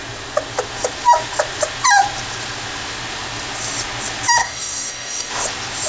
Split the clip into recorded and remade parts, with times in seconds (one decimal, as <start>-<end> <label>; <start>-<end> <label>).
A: 0.0-4.4 recorded; 4.4-5.3 remade; 5.3-5.9 recorded